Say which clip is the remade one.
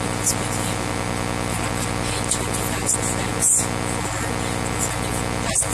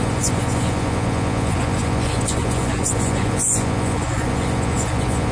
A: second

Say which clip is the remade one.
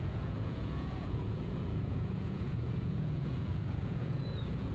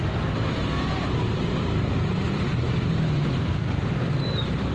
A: first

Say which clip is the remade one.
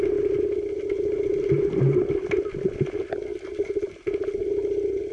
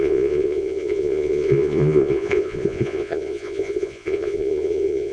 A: second